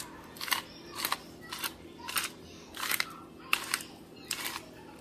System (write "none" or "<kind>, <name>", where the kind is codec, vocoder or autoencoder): none